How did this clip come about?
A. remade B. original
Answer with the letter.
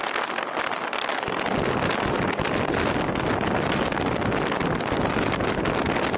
B